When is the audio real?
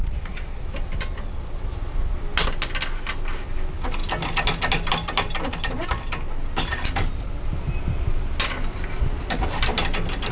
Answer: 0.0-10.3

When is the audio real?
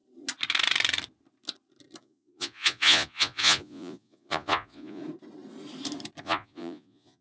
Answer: 0.0-2.0; 5.0-6.2